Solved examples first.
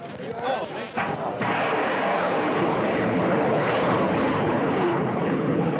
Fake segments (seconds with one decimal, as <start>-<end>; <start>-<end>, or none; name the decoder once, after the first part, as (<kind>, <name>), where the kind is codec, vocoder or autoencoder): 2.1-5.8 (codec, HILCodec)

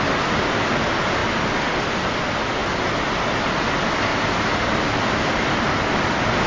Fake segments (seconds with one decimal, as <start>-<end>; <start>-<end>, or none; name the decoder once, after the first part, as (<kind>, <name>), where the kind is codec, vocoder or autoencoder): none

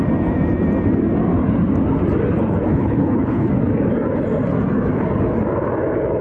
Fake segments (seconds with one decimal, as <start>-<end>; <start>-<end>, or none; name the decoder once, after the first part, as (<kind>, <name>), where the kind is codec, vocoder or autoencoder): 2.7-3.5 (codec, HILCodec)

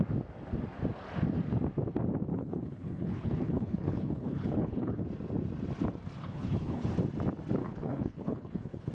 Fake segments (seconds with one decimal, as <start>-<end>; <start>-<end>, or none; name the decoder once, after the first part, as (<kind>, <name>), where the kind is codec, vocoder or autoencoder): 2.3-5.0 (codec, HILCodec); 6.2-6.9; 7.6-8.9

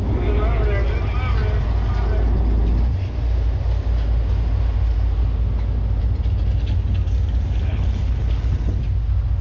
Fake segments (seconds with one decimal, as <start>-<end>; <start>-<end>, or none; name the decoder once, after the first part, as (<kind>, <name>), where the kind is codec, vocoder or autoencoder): 7.6-8.8 (codec, HILCodec)

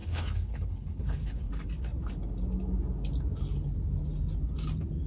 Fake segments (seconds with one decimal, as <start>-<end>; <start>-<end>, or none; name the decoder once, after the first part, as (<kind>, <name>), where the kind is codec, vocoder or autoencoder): 0.0-1.5 (codec, HILCodec)